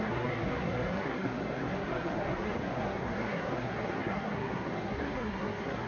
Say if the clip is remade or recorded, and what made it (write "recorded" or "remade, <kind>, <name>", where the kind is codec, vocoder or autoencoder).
remade, codec, SNAC